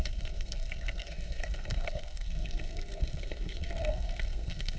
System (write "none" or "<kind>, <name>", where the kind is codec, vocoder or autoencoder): codec, SNAC